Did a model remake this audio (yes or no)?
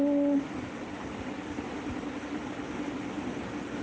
no